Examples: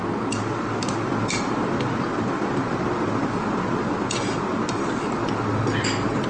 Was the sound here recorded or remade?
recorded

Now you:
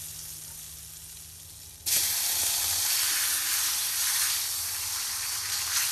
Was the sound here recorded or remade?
recorded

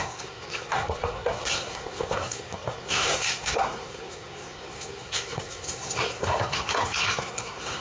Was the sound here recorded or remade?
remade